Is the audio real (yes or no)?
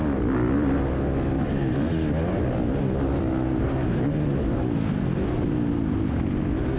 yes